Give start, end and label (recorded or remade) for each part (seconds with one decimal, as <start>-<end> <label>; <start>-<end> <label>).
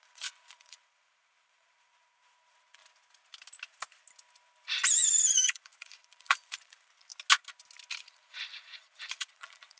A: 0.0-2.8 remade; 2.8-5.2 recorded; 5.2-7.1 remade; 7.1-8.0 recorded; 8.0-9.8 remade